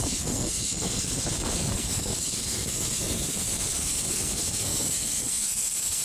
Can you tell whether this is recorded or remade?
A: remade